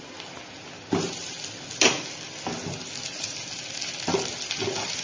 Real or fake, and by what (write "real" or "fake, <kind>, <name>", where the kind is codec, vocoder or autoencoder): real